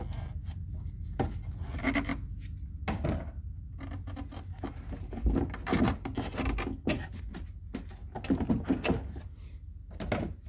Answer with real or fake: real